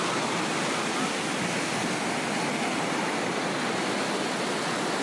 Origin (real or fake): real